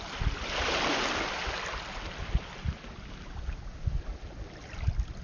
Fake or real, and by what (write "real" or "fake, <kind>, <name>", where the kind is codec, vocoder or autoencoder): real